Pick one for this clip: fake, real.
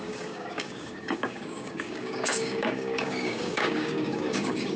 fake